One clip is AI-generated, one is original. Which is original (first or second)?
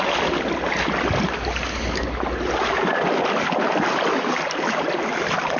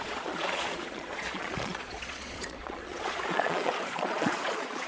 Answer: first